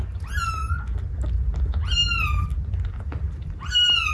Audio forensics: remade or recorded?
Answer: recorded